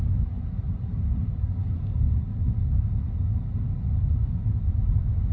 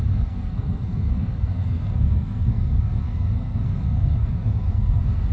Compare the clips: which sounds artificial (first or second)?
second